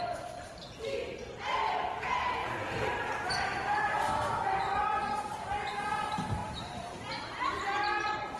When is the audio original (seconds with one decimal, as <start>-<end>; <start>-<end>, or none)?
4.1-5.7